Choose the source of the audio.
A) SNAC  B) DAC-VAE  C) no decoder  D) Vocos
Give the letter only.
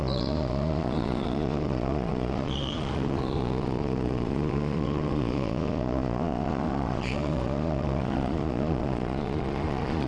D